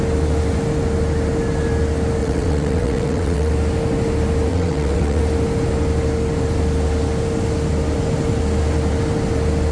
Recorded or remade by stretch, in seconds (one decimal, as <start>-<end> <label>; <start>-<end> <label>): 0.0-2.2 recorded; 2.2-3.5 remade; 3.5-4.5 recorded; 4.5-5.2 remade; 5.2-9.7 recorded